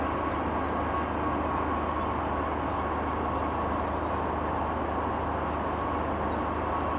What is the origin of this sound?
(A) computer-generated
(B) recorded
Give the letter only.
B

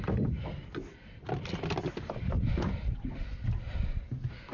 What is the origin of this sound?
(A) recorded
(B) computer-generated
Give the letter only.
A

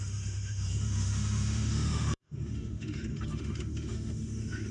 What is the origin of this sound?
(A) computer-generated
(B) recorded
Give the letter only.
A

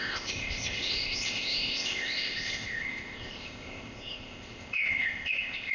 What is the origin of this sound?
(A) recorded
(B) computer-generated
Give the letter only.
B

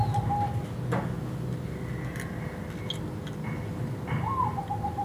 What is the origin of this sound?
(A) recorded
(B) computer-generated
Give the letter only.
A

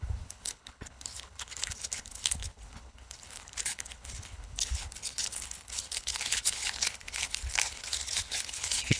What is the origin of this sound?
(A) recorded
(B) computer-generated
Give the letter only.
B